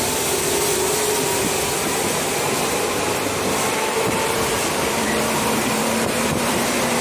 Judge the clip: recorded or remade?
remade